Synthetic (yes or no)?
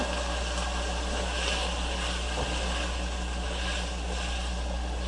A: no